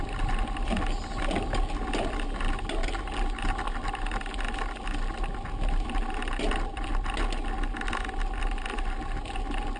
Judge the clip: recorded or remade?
recorded